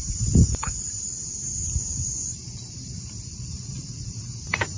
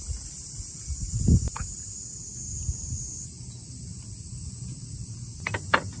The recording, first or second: second